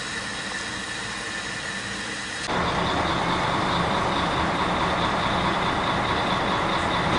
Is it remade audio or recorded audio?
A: recorded